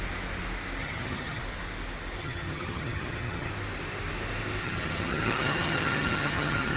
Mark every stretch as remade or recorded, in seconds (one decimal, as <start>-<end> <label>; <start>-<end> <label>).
0.0-0.8 recorded; 0.8-1.4 remade; 1.4-2.2 recorded; 2.2-3.5 remade; 3.5-4.6 recorded; 4.6-6.8 remade

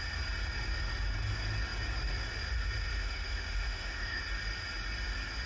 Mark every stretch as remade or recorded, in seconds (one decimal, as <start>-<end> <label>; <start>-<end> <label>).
0.0-2.9 recorded; 2.9-4.2 remade; 4.2-5.5 recorded

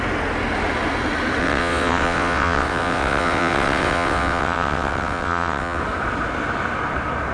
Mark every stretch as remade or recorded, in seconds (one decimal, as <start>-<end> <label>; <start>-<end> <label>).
0.0-1.4 recorded; 1.4-5.8 remade; 5.8-7.3 recorded